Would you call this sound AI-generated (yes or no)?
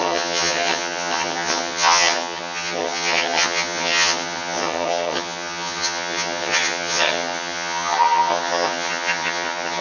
yes